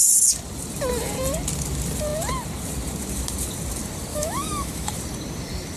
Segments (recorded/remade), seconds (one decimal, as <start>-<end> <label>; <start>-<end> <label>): 0.0-4.1 recorded; 4.1-4.9 remade; 4.9-5.8 recorded